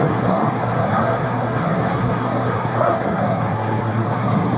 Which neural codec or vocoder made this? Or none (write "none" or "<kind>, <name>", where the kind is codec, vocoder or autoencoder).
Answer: codec, SNAC